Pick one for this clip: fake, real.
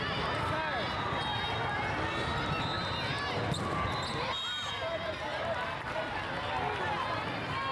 real